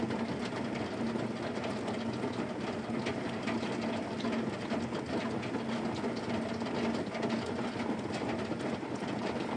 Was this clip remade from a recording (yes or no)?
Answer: no